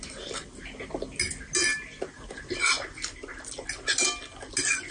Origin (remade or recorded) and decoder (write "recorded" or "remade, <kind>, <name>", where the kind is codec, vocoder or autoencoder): recorded